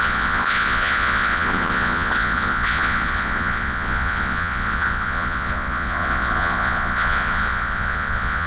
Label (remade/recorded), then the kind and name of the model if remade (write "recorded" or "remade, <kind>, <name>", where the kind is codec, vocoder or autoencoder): remade, vocoder, Vocos